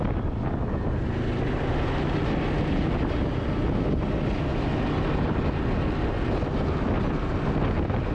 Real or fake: real